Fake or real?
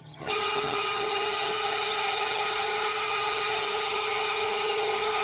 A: fake